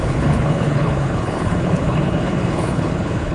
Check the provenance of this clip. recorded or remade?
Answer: remade